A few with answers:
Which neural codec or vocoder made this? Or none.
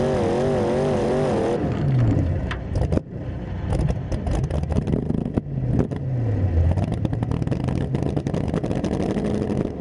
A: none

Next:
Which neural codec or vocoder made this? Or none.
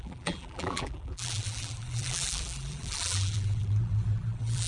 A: vocoder, BigVGAN v2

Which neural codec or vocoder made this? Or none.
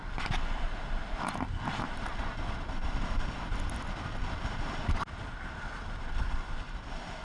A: none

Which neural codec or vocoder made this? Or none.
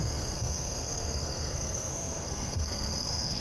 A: codec, SNAC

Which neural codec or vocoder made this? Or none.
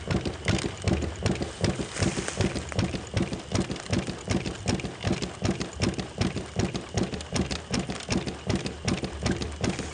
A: none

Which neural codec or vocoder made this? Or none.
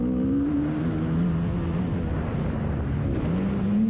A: none